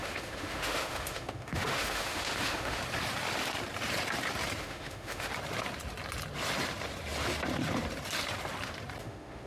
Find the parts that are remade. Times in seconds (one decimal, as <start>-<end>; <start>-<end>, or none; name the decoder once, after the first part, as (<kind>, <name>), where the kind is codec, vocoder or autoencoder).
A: 0.0-2.8 (autoencoder, DAC-VAE); 4.6-5.3; 9.0-9.5